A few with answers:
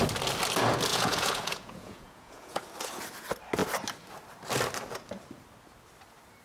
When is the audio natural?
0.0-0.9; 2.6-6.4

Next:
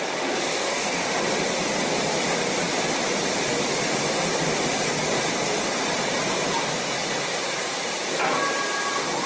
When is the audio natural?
0.0-0.5; 1.1-9.3

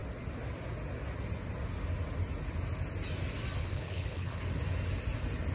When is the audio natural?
0.0-3.6; 4.4-5.5

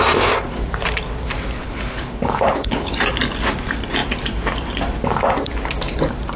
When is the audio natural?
0.0-1.6; 2.9-6.4

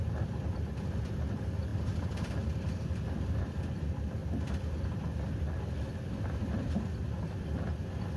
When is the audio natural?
4.2-5.9